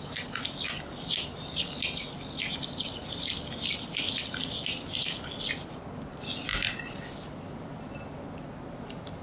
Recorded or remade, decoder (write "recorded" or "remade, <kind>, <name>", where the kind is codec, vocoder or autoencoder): recorded